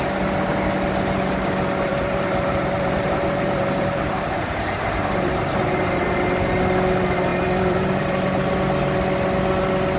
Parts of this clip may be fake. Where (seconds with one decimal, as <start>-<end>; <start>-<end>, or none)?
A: 1.9-5.4; 7.3-8.6